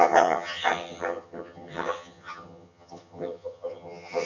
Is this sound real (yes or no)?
no